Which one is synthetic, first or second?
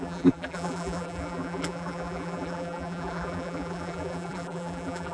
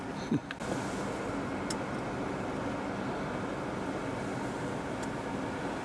first